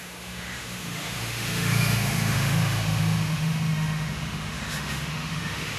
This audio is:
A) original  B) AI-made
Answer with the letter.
B